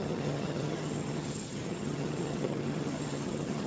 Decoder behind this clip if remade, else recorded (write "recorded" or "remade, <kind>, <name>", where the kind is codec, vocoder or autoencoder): remade, vocoder, HiFi-GAN